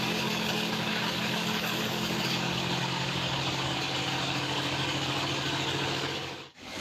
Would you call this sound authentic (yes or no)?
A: no